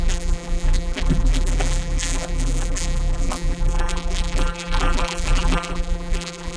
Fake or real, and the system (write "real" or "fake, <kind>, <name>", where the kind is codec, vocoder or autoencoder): fake, vocoder, BigVGAN v2